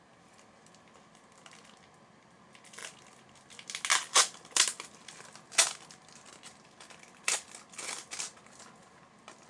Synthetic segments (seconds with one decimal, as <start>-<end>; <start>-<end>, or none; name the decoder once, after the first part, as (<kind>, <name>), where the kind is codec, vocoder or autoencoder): none